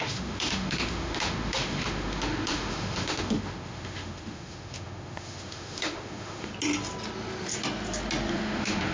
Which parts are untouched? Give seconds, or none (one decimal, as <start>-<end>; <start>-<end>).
6.5-8.3